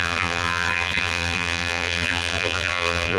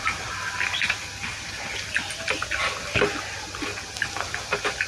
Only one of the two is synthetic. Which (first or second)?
first